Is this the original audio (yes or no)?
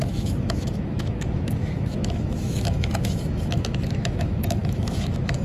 no